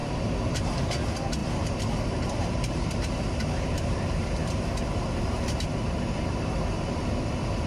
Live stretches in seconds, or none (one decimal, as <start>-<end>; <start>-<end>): 0.9-1.4; 5.4-7.7